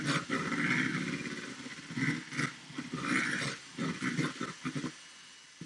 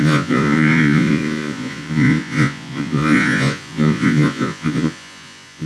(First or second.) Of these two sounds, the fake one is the second